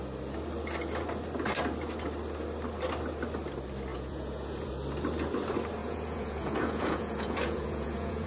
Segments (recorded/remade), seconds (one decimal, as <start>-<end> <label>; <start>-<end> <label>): 0.0-3.9 recorded; 3.9-4.7 remade; 4.7-5.8 recorded; 5.8-8.3 remade